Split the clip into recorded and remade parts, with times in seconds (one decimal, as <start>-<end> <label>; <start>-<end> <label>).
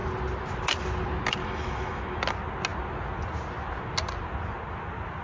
0.0-1.4 recorded; 1.4-2.2 remade; 2.2-5.2 recorded